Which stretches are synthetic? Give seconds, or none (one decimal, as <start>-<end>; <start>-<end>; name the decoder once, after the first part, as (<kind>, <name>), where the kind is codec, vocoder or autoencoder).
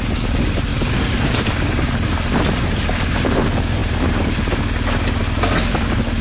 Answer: none